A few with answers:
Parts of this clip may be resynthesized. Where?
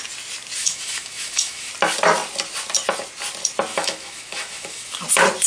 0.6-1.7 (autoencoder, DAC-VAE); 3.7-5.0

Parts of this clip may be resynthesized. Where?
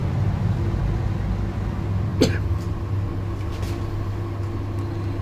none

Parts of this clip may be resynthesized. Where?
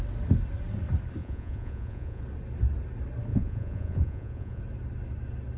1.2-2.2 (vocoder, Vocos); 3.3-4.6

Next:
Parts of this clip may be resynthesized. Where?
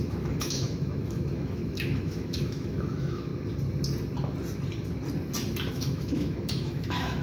0.0-3.3 (autoencoder, DAC-VAE); 5.7-7.2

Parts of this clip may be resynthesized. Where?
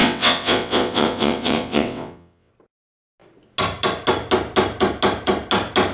0.0-2.5 (vocoder, WaveNeXt)